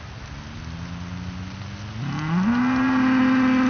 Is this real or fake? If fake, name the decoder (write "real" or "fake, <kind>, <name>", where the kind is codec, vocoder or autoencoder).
real